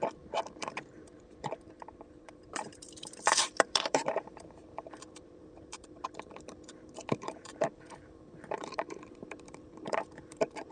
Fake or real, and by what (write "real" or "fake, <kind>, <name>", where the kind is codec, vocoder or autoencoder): fake, vocoder, BigVGAN v2